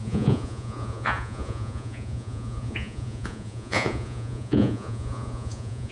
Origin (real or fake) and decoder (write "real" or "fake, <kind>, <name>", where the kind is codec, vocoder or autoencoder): fake, vocoder, Vocos